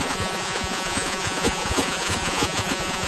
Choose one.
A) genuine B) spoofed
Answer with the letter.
B